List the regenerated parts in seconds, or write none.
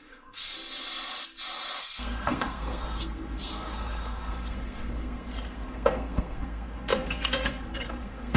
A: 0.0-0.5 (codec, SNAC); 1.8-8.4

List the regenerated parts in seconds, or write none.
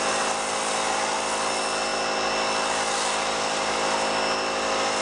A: none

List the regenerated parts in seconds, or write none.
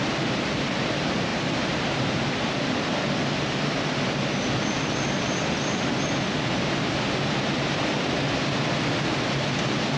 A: 1.3-2.0 (vocoder, BigVGAN v2)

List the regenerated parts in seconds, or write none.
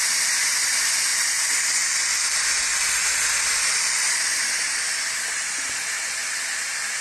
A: 1.1-5.3 (vocoder, BigVGAN v2)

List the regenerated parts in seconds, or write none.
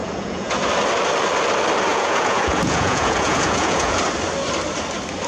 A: 0.0-0.5 (vocoder, Vocos); 1.9-4.0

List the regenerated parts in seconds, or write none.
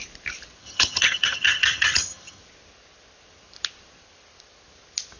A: 0.6-2.4 (vocoder, HiFi-GAN)